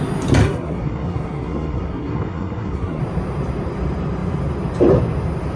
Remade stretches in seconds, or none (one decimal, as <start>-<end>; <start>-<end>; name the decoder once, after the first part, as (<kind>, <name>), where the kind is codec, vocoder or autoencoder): 0.4-3.0 (codec, SNAC)